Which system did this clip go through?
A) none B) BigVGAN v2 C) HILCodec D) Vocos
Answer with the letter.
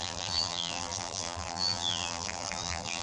B